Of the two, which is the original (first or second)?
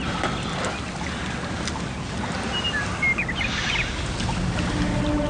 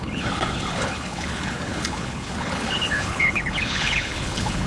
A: first